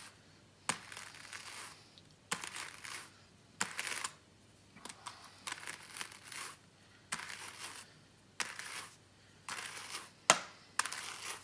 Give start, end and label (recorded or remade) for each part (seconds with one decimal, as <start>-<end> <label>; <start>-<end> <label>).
0.0-2.0 recorded; 2.0-3.9 remade; 3.9-11.4 recorded